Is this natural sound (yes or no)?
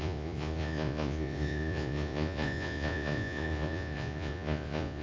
no